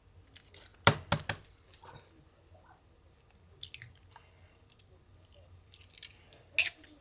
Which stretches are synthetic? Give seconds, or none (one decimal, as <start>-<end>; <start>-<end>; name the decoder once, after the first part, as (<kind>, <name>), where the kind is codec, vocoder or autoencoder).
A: none